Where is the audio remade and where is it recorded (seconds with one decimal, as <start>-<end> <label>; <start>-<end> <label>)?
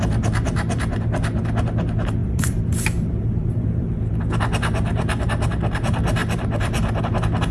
0.0-2.2 recorded; 2.2-3.9 remade; 3.9-6.2 recorded; 6.2-7.0 remade; 7.0-7.5 recorded